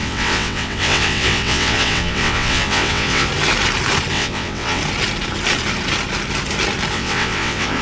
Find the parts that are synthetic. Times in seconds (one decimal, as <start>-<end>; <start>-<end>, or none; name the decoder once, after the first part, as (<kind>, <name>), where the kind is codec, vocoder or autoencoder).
0.0-3.3 (vocoder, WaveNeXt); 4.1-4.8; 6.9-7.8